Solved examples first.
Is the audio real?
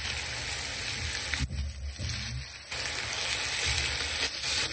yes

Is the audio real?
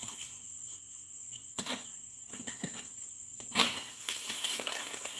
no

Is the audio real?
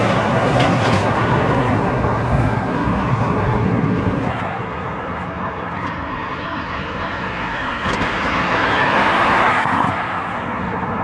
no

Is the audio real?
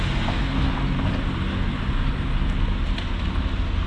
yes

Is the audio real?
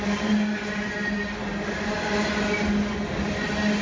yes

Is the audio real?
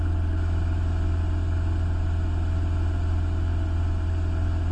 yes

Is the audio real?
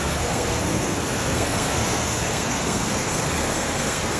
no